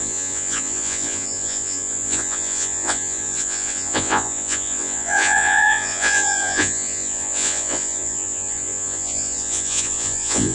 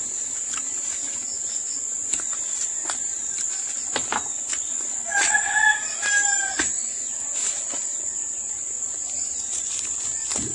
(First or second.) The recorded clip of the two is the second